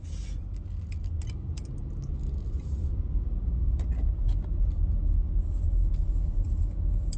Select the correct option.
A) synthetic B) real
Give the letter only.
B